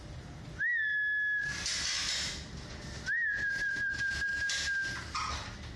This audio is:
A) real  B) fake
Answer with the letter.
A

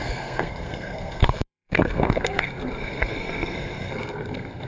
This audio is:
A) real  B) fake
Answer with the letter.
B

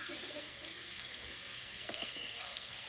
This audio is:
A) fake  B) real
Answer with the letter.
A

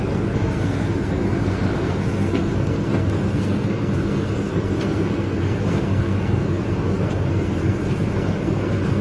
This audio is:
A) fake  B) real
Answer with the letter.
A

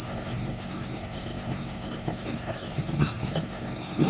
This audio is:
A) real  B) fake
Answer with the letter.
B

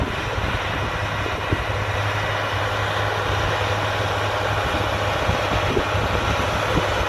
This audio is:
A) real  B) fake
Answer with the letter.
A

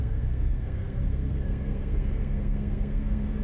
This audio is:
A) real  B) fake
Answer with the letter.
B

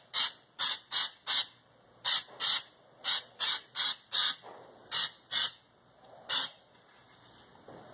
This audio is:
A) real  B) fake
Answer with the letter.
A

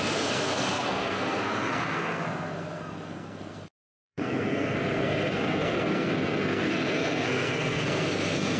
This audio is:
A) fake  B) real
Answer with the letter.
A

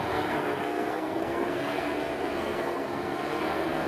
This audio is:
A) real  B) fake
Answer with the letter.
B